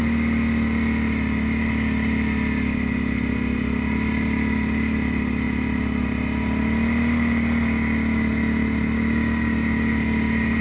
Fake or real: real